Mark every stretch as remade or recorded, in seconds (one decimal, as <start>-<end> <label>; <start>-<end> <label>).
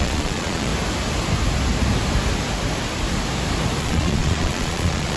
0.0-0.7 remade; 0.7-3.8 recorded; 3.8-5.2 remade